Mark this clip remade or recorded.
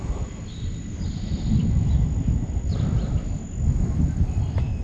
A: recorded